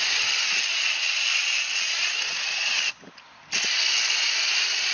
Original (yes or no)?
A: yes